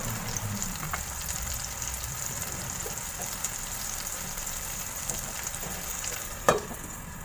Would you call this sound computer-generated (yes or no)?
yes